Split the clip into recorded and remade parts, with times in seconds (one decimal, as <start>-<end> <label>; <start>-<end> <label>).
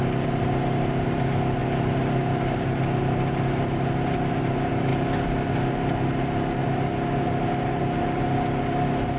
0.0-9.2 recorded